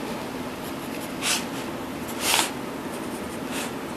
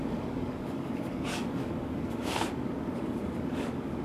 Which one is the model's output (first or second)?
second